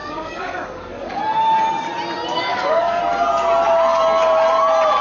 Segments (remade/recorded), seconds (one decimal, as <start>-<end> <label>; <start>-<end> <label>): 0.0-1.2 remade; 1.2-2.3 recorded; 2.3-3.0 remade; 3.0-5.0 recorded